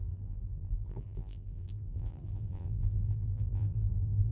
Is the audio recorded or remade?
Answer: remade